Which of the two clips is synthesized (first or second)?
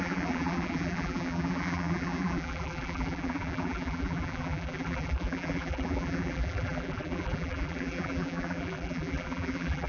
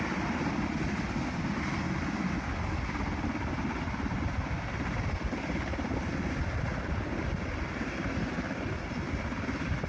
first